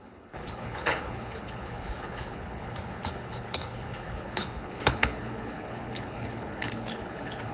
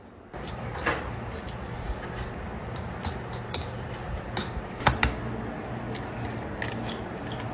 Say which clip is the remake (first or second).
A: first